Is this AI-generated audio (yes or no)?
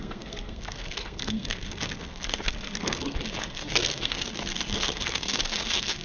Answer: yes